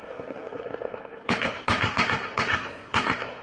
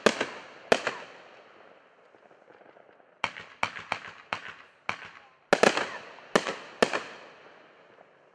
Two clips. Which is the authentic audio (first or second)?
second